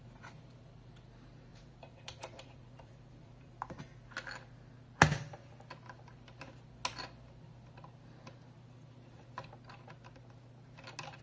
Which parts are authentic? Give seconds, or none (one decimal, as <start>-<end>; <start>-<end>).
0.0-1.5; 3.8-11.2